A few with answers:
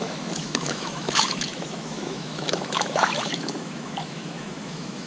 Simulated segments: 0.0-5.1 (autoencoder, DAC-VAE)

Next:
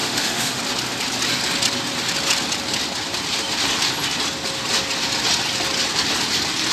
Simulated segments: 0.0-0.6 (autoencoder, DAC-VAE)